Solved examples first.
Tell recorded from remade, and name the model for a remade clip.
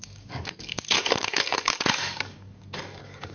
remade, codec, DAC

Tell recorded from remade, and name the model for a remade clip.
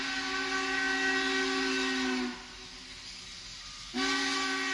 recorded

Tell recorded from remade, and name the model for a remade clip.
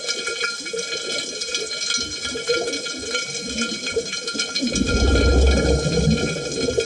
recorded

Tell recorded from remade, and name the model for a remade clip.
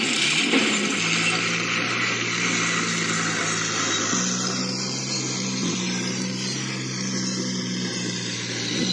recorded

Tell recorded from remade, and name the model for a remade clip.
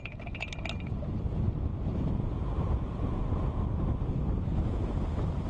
recorded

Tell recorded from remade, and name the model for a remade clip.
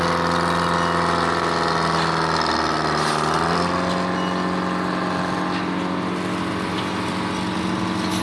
recorded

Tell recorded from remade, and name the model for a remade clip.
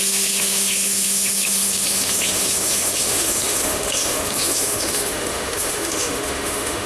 remade, autoencoder, DAC-VAE